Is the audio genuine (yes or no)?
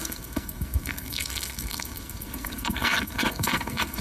no